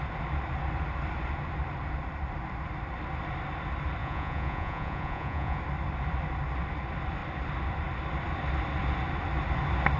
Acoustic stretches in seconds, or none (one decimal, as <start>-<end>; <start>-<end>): 0.0-4.0; 5.6-10.0